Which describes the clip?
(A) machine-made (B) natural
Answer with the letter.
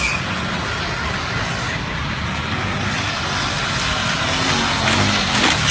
B